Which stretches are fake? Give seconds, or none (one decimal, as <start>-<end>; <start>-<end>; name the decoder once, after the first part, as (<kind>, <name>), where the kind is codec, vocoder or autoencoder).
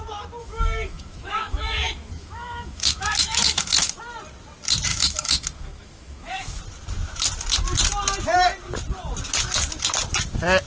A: 0.4-4.0 (autoencoder, DAC-VAE); 4.9-6.6